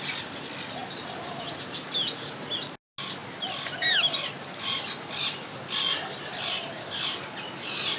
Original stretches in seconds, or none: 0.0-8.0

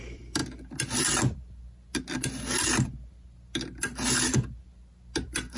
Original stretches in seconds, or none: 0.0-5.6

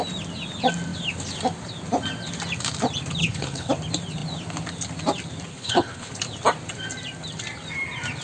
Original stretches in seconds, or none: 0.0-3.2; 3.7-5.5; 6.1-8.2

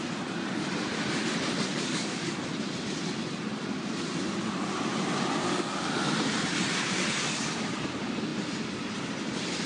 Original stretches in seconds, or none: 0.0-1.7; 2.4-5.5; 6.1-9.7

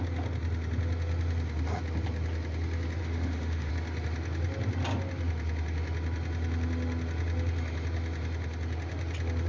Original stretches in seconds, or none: 0.0-3.0; 3.7-9.5

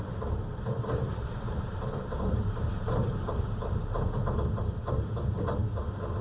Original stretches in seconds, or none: 0.0-0.5; 3.7-4.8; 5.7-6.2